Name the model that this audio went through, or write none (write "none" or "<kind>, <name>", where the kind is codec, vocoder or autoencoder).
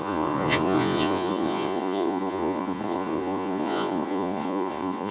vocoder, Vocos